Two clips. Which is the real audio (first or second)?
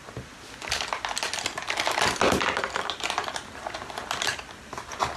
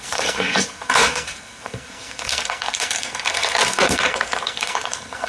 first